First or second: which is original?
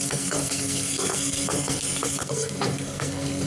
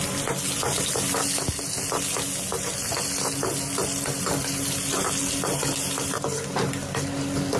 second